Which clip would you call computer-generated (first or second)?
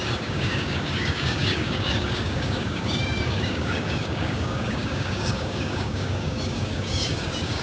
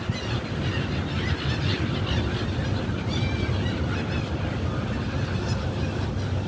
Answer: first